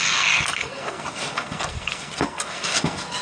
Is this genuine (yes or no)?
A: no